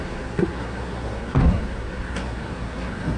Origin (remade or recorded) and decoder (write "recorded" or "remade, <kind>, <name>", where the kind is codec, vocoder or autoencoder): remade, codec, SNAC